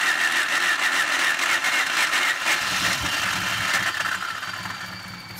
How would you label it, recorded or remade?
recorded